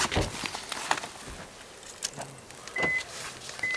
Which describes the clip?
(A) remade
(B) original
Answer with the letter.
B